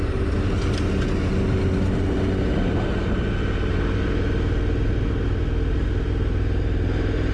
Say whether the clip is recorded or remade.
recorded